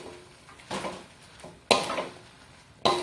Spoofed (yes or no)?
no